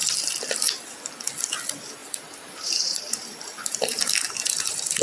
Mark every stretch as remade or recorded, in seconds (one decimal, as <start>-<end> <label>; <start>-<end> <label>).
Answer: 0.0-2.0 recorded; 2.0-5.0 remade